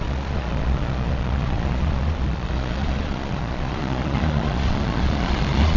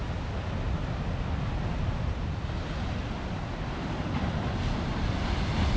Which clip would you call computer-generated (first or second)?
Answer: first